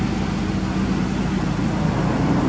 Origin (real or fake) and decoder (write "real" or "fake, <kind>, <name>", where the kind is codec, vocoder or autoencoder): real